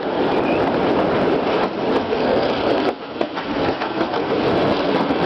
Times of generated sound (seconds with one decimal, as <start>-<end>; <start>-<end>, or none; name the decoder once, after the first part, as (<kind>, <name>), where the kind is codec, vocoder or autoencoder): 2.0-4.3 (codec, SNAC); 4.7-5.3